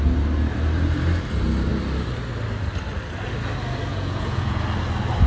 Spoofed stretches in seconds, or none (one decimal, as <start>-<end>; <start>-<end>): 3.9-4.6